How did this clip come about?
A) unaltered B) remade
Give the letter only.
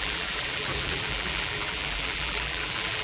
B